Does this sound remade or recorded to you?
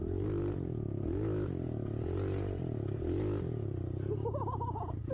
recorded